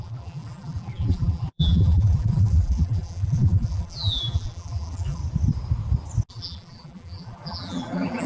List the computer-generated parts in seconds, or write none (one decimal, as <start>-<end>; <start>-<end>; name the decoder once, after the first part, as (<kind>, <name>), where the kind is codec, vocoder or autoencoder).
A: 0.0-5.2 (vocoder, BigVGAN v2); 6.3-8.3

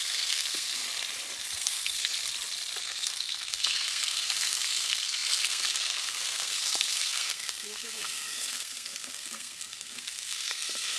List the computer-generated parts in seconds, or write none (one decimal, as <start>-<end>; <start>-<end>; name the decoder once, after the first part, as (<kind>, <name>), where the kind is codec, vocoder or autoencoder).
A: 0.0-0.8 (codec, SNAC); 1.4-2.1; 2.8-11.0

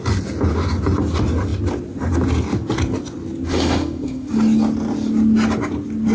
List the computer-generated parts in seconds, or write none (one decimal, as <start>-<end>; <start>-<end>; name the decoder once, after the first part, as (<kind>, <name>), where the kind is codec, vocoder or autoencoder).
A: 3.5-4.3 (autoencoder, DAC-VAE)